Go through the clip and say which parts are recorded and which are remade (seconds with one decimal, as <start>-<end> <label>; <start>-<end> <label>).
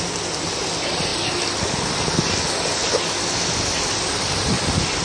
0.0-5.0 recorded